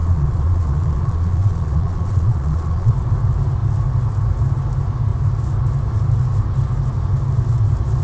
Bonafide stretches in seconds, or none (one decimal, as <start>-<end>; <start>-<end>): 2.9-8.0